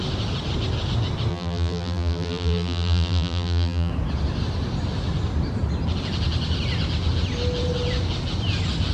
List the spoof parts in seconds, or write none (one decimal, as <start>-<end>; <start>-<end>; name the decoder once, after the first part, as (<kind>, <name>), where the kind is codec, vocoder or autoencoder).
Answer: 1.3-3.9 (vocoder, BigVGAN v2)